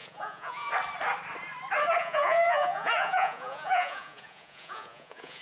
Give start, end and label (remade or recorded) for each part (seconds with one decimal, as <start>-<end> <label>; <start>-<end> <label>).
0.0-0.7 remade; 0.7-2.0 recorded; 2.0-5.4 remade

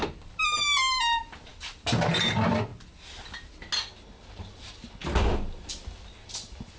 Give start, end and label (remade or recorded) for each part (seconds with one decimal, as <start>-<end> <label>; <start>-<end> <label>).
0.0-6.8 recorded

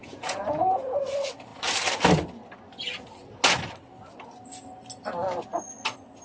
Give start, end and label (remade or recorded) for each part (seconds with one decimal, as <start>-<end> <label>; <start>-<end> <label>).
0.0-1.0 remade; 1.0-6.2 recorded

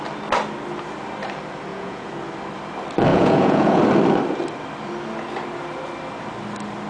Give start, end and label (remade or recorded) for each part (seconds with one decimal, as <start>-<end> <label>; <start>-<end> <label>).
0.0-1.7 recorded; 1.7-2.2 remade; 2.2-3.1 recorded; 3.1-3.8 remade; 3.8-6.9 recorded